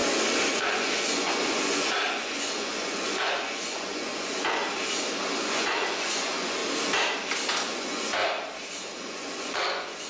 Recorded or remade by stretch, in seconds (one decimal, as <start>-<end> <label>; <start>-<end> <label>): 0.0-0.5 recorded; 0.5-4.6 remade; 4.6-5.4 recorded; 5.4-6.6 remade; 6.6-7.6 recorded; 7.6-8.2 remade; 8.2-9.0 recorded; 9.0-10.1 remade